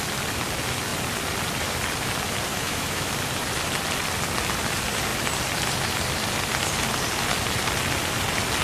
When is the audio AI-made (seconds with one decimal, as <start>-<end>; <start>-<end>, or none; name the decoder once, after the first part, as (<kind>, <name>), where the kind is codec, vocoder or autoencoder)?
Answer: 2.5-3.1 (autoencoder, DAC-VAE)